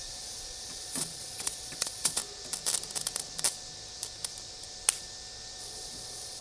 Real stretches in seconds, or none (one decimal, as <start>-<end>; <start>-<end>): 2.2-5.6